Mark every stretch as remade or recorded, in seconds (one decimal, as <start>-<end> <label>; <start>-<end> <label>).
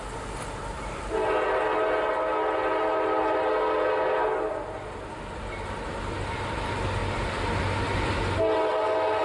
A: 0.0-9.2 recorded